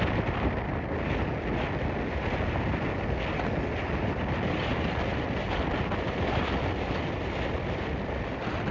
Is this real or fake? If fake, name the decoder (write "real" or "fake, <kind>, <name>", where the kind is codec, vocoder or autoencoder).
real